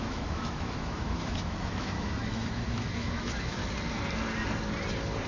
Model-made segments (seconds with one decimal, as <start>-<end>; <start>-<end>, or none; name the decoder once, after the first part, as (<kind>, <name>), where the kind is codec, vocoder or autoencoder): 0.0-3.6 (autoencoder, DAC-VAE)